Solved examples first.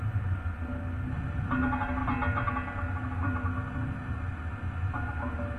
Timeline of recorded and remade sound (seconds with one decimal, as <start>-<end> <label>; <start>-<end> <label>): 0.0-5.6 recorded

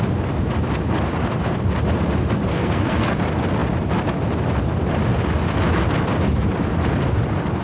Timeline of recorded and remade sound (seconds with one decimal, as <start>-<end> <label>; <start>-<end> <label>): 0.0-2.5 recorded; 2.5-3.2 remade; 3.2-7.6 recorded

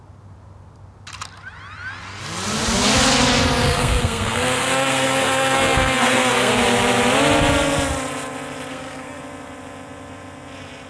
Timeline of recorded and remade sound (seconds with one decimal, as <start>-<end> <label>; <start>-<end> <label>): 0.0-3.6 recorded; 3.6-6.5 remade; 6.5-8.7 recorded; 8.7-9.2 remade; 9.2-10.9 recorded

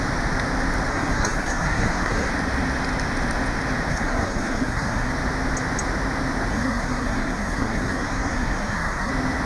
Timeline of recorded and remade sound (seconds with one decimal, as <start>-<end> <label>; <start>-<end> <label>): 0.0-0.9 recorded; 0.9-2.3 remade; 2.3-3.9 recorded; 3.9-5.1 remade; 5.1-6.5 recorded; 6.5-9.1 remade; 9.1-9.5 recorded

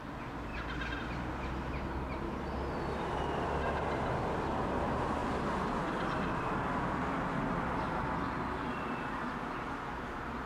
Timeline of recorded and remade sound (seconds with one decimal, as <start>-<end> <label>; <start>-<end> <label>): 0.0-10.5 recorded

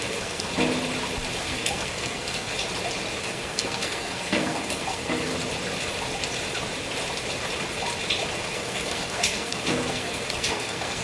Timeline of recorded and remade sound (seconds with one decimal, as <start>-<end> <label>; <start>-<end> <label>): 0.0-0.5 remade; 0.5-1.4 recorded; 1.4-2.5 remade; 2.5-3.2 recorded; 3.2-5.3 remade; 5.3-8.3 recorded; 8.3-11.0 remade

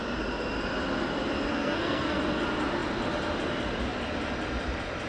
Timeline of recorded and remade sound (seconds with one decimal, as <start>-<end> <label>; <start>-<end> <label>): 0.0-1.5 recorded; 1.5-2.2 remade; 2.2-5.1 recorded

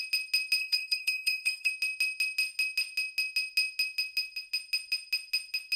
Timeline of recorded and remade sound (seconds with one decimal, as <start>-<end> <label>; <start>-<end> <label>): 0.0-0.6 recorded; 0.6-1.7 remade; 1.7-5.8 recorded